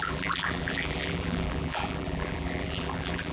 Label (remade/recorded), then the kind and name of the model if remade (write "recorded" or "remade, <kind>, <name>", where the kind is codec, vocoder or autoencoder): remade, vocoder, BigVGAN v2